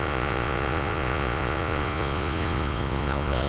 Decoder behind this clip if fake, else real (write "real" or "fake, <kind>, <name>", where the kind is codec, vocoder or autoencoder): fake, vocoder, Vocos